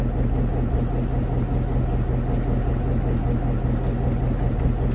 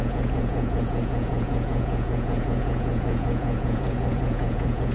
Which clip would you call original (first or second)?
first